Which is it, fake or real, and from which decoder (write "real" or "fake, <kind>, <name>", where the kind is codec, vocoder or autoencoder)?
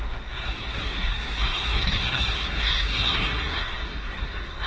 fake, codec, SNAC